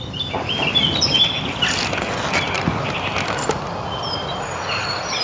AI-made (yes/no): no